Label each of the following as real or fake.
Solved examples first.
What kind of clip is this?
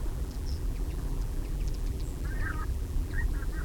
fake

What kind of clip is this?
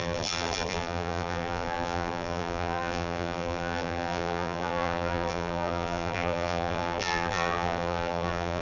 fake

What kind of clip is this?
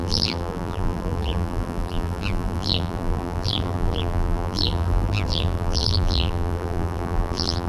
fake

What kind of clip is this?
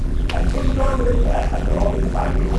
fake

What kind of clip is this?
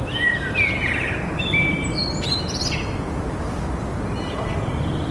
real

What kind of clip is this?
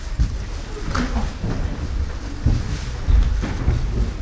real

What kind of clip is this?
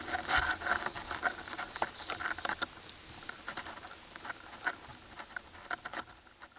real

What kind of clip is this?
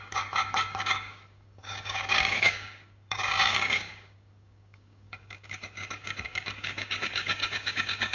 fake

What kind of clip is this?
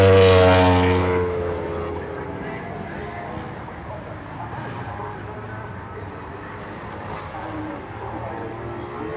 real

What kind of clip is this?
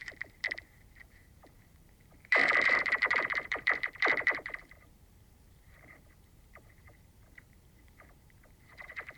fake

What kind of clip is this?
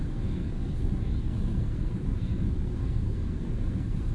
fake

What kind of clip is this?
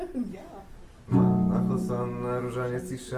real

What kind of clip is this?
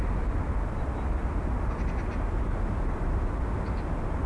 real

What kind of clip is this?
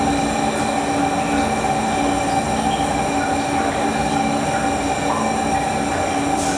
real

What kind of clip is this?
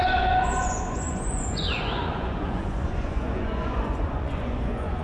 fake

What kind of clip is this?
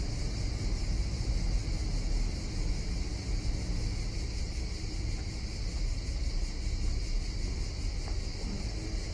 real